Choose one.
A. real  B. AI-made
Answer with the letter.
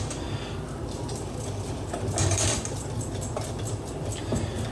A